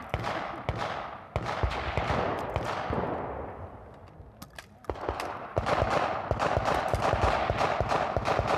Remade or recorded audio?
recorded